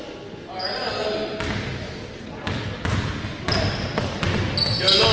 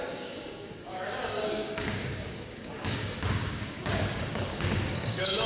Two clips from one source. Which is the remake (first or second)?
second